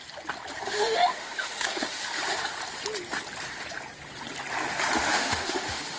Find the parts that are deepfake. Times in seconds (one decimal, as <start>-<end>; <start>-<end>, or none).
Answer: 0.7-2.2; 5.1-6.0